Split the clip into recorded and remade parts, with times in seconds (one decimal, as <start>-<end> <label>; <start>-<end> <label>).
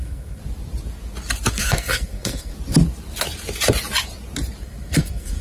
0.0-0.4 remade; 0.4-1.5 recorded; 1.5-2.5 remade; 2.5-4.6 recorded; 4.6-5.4 remade